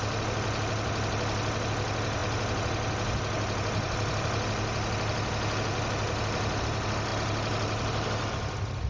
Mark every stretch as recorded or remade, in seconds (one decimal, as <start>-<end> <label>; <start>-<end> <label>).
0.0-8.9 recorded